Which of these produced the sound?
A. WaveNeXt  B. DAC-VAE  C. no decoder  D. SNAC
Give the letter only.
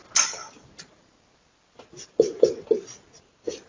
C